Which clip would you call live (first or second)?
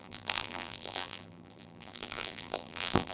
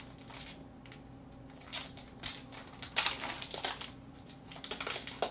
second